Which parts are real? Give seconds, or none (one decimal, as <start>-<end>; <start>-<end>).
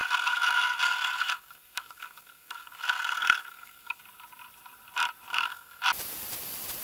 4.0-5.3; 5.8-6.8